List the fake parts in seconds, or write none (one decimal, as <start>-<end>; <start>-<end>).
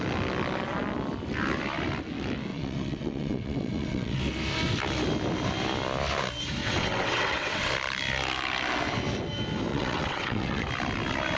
2.5-4.2; 6.6-7.7; 9.7-10.7